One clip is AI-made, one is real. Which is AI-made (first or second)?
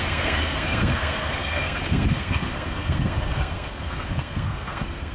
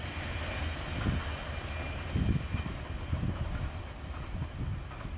first